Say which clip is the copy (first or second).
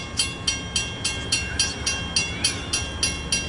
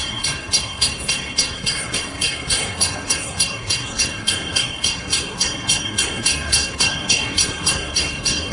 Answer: second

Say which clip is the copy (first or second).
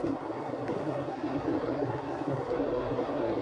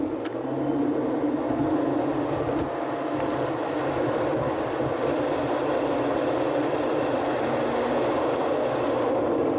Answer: first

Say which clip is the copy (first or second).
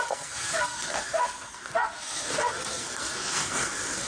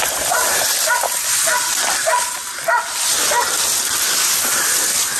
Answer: first